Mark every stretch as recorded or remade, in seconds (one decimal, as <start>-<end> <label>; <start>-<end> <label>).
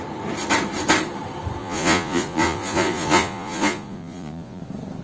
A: 0.0-1.6 recorded; 1.6-4.6 remade; 4.6-5.0 recorded